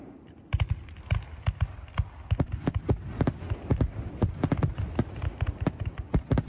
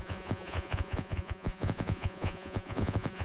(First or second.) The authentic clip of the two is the first